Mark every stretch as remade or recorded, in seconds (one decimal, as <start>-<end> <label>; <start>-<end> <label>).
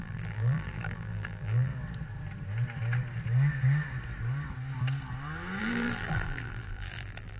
0.0-1.7 remade; 1.7-5.6 recorded; 5.6-7.4 remade